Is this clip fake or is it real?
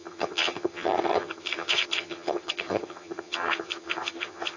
fake